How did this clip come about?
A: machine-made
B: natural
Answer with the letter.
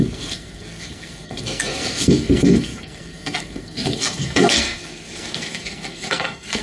A